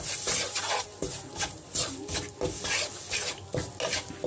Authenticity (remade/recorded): recorded